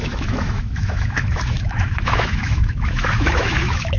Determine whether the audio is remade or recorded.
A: remade